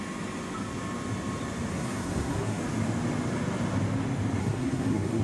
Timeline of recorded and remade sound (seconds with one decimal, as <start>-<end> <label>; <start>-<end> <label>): 0.0-1.7 recorded; 1.7-2.6 remade; 2.6-4.4 recorded; 4.4-5.2 remade